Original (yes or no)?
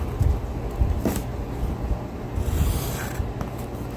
yes